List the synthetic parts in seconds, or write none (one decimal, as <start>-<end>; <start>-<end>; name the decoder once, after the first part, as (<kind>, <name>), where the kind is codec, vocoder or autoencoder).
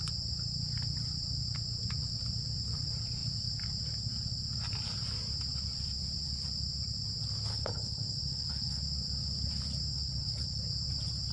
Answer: 7.5-8.8 (codec, HILCodec); 9.9-10.6